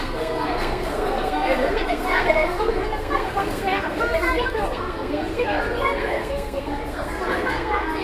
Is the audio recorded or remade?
remade